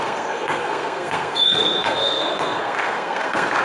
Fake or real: fake